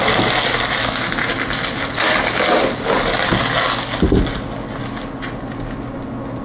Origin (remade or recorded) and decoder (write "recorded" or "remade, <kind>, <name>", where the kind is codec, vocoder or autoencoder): recorded